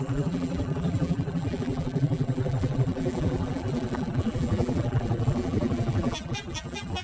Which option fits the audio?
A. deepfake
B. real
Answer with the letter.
A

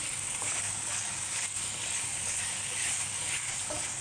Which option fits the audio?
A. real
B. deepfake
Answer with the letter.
B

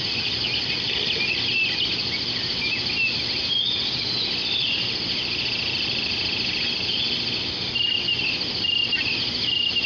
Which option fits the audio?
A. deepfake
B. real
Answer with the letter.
B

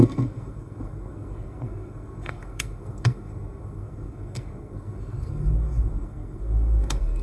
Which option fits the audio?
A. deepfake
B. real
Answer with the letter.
A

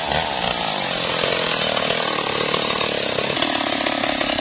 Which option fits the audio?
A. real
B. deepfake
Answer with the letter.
A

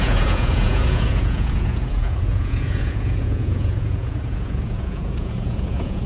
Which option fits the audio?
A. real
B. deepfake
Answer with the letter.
B